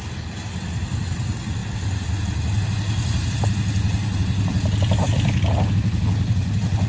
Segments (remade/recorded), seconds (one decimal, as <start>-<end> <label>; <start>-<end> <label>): 0.0-6.9 recorded